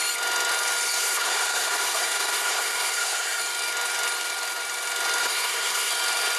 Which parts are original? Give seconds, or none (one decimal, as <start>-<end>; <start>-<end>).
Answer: 0.0-1.0; 3.4-5.2; 5.9-6.4